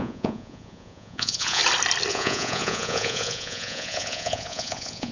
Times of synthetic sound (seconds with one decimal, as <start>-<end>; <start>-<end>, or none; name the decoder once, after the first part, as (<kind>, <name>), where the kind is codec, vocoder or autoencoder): 0.0-1.6 (vocoder, Vocos); 2.1-5.1